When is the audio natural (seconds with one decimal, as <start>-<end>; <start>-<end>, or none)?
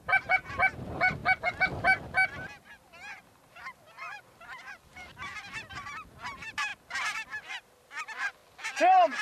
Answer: 1.2-3.2; 6.7-7.3; 8.4-9.2